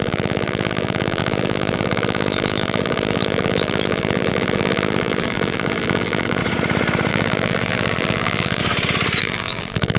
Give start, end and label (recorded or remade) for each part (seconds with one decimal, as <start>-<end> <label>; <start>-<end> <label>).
0.0-6.4 remade; 6.4-7.1 recorded; 7.1-8.6 remade; 8.6-9.2 recorded; 9.2-10.0 remade